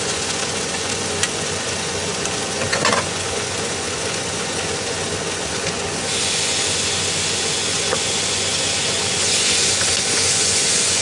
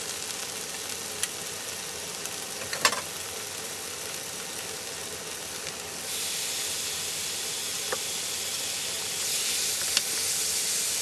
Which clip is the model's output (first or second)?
first